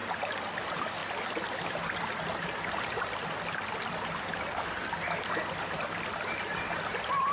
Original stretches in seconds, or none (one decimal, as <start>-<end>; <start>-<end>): 1.0-5.4